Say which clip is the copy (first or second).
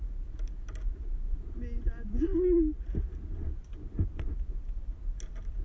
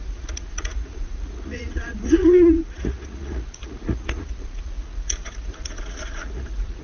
second